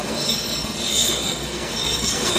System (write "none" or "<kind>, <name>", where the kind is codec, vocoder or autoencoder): codec, SNAC